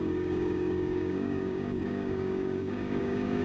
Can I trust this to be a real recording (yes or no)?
no